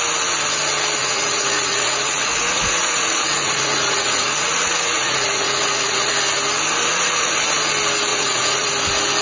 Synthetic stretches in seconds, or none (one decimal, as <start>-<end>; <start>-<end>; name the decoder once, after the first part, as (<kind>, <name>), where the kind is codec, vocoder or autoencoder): 1.0-6.1 (vocoder, Vocos); 6.9-7.4; 8.1-8.7